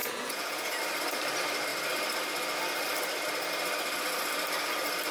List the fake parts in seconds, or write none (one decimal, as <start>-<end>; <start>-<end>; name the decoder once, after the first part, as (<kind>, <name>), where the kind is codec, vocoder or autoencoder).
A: 0.0-0.8 (vocoder, Vocos)